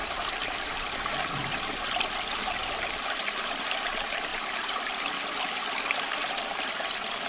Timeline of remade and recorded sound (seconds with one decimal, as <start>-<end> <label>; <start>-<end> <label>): 0.0-7.3 remade